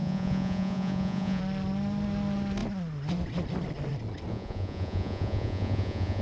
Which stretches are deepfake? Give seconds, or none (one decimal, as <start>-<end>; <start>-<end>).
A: 0.0-1.4; 4.3-6.2